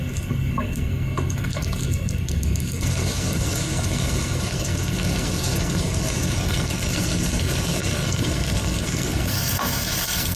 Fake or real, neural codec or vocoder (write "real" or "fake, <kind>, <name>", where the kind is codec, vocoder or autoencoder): fake, codec, SNAC